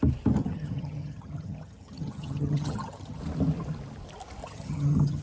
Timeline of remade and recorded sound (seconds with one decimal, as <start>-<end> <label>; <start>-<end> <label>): 0.0-0.4 recorded; 0.4-3.2 remade; 3.2-4.4 recorded; 4.4-5.2 remade